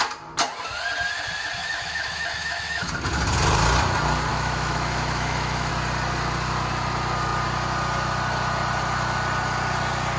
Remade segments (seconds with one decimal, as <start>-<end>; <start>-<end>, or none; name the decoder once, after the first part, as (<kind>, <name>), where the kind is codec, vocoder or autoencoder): 1.6-2.9 (autoencoder, DAC-VAE); 4.3-5.7